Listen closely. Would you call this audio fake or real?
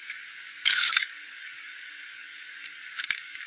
fake